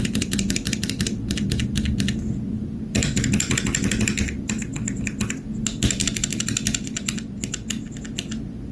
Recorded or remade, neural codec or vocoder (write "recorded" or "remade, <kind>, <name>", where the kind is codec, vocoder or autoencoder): recorded